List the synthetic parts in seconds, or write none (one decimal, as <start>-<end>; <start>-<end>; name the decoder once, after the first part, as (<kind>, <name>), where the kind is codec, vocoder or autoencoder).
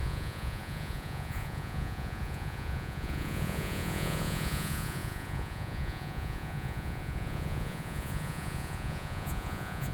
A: 0.0-9.9 (vocoder, Vocos)